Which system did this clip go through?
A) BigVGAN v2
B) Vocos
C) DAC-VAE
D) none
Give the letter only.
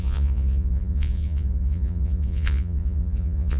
B